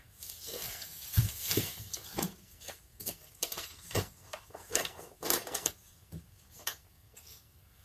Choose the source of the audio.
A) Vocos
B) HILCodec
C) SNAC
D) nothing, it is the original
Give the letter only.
C